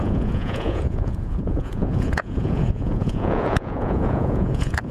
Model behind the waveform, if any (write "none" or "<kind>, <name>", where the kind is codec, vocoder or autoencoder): vocoder, Vocos